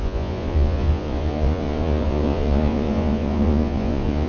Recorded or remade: remade